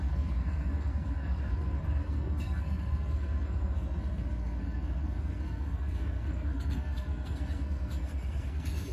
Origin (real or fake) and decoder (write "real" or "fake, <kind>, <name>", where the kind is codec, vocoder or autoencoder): fake, codec, SNAC